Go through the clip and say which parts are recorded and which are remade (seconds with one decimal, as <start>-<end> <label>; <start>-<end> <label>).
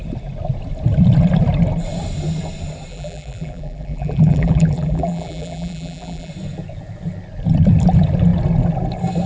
0.0-2.9 recorded; 2.9-6.3 remade; 6.3-9.3 recorded